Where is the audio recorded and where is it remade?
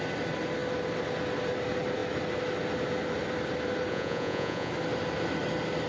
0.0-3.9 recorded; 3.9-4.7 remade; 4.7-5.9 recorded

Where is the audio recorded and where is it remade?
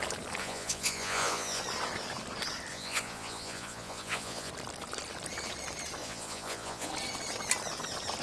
0.0-0.4 recorded; 0.4-1.6 remade; 1.6-2.7 recorded; 2.7-4.5 remade; 4.5-6.0 recorded; 6.0-6.9 remade; 6.9-8.2 recorded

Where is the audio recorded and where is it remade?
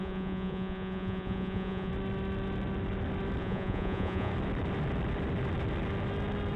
0.0-1.9 remade; 1.9-3.4 recorded; 3.4-4.3 remade; 4.3-6.6 recorded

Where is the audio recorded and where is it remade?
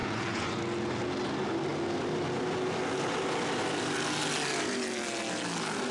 0.0-0.6 remade; 0.6-5.9 recorded